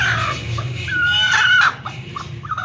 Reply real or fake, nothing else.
real